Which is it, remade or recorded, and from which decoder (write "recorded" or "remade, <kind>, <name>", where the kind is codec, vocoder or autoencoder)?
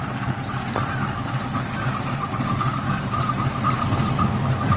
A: recorded